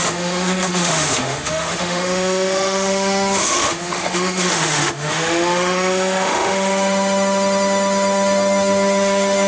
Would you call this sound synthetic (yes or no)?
yes